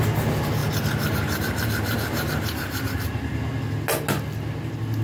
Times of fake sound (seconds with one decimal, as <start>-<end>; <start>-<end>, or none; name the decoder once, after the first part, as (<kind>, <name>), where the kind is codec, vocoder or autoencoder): 0.6-3.6 (vocoder, BigVGAN v2)